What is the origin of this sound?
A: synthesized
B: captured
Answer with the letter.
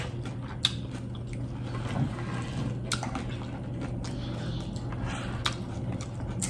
B